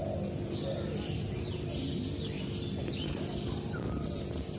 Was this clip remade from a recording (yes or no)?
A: no